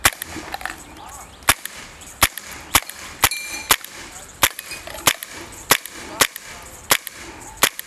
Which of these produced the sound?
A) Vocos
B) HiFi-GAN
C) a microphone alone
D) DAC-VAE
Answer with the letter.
C